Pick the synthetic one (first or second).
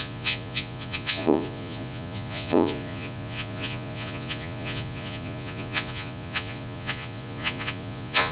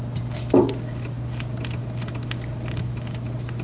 first